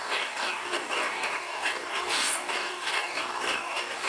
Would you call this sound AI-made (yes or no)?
yes